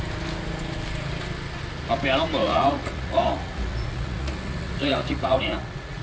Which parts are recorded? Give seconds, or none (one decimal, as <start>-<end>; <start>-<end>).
0.0-2.4